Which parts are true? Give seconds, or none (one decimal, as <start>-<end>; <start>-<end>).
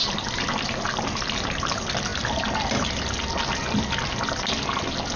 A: 0.0-5.2